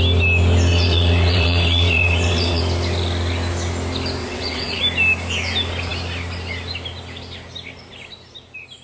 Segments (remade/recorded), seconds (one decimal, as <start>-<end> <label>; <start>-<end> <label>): 0.0-0.7 recorded; 0.7-2.6 remade; 2.6-4.2 recorded; 4.2-4.8 remade; 4.8-8.8 recorded